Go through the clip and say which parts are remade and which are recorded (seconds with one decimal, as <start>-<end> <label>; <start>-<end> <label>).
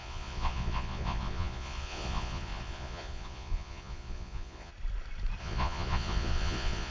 0.0-4.7 remade; 4.7-5.4 recorded; 5.4-6.9 remade